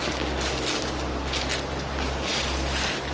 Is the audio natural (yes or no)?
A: yes